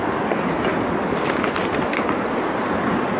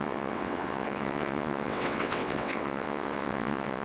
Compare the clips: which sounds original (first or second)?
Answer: first